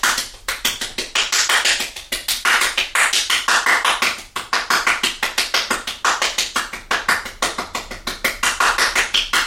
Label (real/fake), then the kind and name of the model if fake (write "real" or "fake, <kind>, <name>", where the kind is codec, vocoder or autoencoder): real